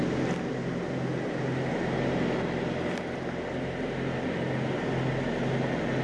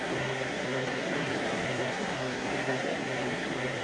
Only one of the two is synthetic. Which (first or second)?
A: second